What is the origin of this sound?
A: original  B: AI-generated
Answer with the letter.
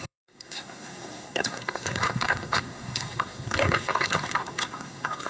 B